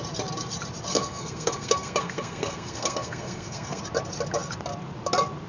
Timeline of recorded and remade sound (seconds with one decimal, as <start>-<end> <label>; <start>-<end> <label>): 0.0-0.9 recorded; 0.9-3.8 remade; 3.8-5.5 recorded